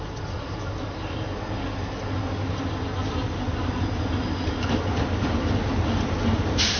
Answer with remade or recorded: recorded